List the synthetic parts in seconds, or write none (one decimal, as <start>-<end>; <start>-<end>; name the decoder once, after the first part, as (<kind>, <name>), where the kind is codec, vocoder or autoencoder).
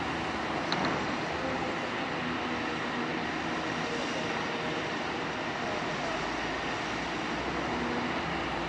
none